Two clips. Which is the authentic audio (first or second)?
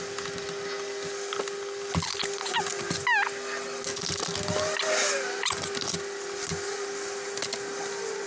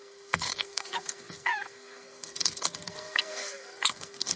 first